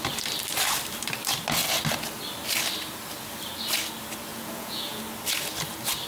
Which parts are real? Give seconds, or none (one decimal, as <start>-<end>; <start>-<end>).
0.0-4.3; 5.0-6.1